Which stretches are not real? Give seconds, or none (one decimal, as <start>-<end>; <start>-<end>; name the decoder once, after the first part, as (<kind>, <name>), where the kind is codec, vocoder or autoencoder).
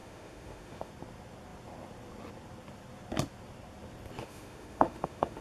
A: 0.0-0.9 (autoencoder, DAC-VAE); 4.2-5.4